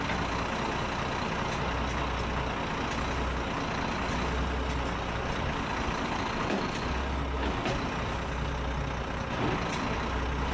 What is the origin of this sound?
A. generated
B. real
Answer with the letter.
B